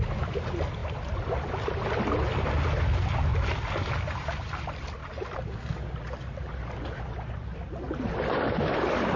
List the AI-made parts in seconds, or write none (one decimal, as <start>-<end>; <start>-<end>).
none